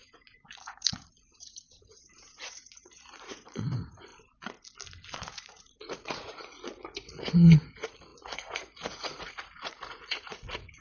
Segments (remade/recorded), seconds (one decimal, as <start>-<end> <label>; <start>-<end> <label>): 0.0-4.1 remade; 4.1-5.2 recorded; 5.2-10.8 remade